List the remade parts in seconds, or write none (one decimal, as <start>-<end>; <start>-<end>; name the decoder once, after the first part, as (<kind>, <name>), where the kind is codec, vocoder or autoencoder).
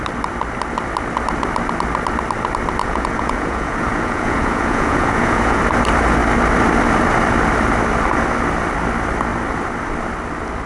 2.8-5.6 (vocoder, Vocos)